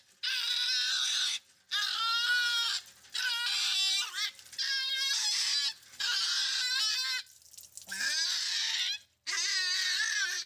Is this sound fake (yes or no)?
no